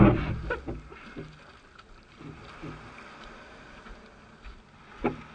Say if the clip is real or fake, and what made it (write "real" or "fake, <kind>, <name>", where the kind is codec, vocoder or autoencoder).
real